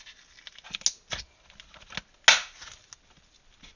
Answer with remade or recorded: recorded